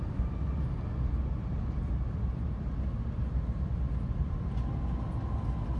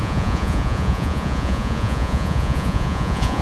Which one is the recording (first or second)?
first